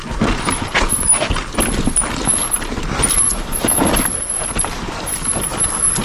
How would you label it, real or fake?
real